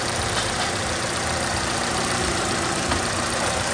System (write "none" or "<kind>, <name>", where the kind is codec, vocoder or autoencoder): vocoder, BigVGAN v2